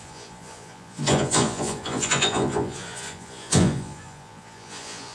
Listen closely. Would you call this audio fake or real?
fake